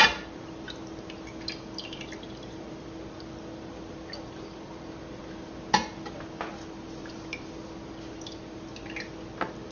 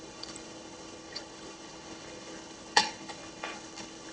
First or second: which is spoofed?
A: second